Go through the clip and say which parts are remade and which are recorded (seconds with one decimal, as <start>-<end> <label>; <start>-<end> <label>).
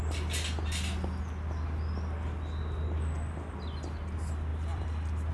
0.0-4.5 recorded; 4.5-5.3 remade